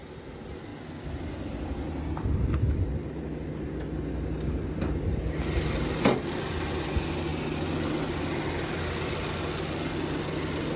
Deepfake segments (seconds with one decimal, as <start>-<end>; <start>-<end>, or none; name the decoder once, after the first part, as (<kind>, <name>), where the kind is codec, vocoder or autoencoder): none